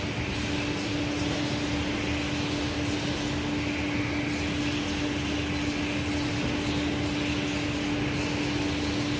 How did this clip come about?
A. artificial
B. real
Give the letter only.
B